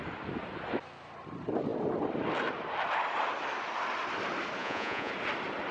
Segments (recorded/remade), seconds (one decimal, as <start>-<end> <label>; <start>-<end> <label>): 0.0-4.6 recorded; 4.6-5.1 remade; 5.1-5.7 recorded